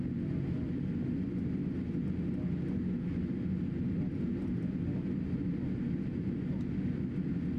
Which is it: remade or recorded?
recorded